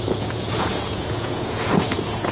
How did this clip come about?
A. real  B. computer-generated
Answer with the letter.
B